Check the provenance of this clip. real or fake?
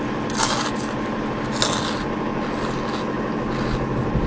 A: real